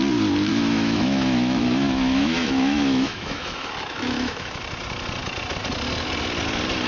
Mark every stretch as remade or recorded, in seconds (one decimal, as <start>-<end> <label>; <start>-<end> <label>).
0.0-0.5 recorded; 0.5-4.6 remade; 4.6-6.9 recorded